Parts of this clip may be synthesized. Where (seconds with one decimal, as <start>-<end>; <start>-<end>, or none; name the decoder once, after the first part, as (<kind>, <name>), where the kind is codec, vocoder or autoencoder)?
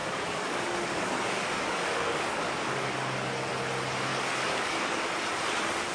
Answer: 0.0-3.5 (codec, DAC); 4.1-5.0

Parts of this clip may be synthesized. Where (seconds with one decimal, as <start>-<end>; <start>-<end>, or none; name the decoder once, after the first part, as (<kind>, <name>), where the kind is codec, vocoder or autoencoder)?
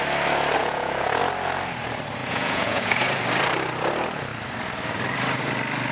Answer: 0.6-1.2 (vocoder, Vocos); 2.2-3.2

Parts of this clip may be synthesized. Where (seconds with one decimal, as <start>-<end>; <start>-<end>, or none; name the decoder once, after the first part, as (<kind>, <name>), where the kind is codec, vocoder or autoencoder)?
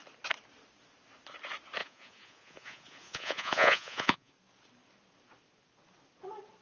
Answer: 1.8-4.3 (vocoder, Vocos)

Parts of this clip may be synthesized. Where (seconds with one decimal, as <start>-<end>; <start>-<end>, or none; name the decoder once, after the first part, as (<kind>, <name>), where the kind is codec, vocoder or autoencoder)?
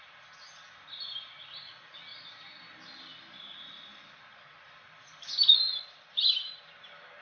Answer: 2.1-2.7 (vocoder, BigVGAN v2); 4.3-6.6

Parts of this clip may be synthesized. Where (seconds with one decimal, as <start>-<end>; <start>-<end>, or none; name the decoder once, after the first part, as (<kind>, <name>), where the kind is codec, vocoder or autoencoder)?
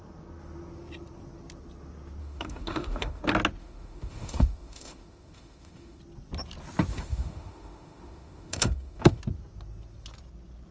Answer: 2.2-3.2 (autoencoder, DAC-VAE); 3.6-6.0; 6.9-9.2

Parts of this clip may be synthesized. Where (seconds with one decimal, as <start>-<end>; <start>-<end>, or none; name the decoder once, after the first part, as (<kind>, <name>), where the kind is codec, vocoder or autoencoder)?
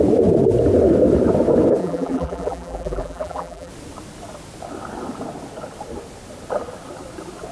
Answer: 1.8-3.7 (vocoder, BigVGAN v2)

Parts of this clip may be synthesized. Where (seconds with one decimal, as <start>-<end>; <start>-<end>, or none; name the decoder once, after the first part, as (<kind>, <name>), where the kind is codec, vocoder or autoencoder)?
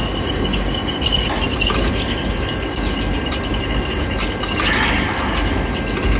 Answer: none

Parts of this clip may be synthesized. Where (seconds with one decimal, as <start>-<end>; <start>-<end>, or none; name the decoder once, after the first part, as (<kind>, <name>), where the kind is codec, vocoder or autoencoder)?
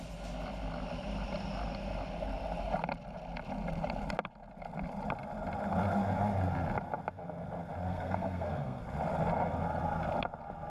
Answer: 7.9-8.8 (codec, SNAC)